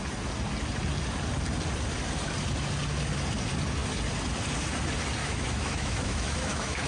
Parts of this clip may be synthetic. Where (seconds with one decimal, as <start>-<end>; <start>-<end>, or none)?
5.2-6.9